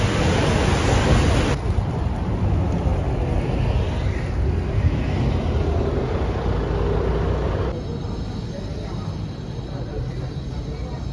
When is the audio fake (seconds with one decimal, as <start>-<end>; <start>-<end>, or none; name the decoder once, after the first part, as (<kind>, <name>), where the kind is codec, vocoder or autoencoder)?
none